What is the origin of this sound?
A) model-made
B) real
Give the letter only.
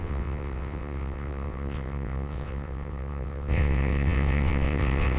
A